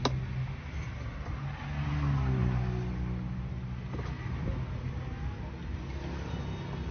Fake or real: real